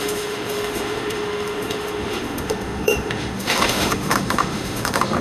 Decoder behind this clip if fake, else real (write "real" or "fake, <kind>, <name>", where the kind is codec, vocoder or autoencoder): fake, autoencoder, DAC-VAE